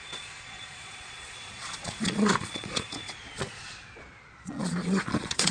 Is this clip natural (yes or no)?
no